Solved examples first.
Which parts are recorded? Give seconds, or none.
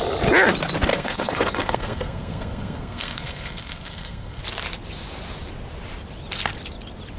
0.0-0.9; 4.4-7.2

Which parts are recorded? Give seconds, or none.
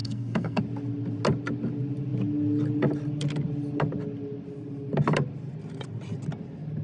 0.6-6.8